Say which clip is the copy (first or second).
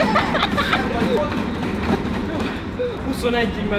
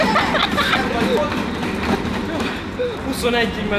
first